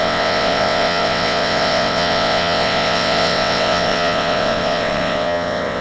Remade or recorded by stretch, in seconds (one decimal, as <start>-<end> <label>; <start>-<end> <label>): 0.0-5.8 remade